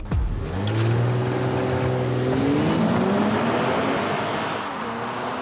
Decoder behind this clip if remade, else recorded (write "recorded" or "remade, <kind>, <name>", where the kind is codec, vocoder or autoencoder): recorded